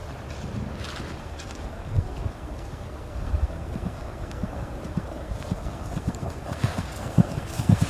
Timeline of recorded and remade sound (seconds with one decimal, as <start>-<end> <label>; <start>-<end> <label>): 0.0-1.2 recorded; 1.2-7.9 remade